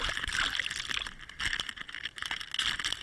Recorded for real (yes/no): yes